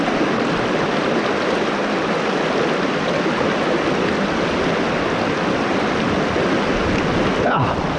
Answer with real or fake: real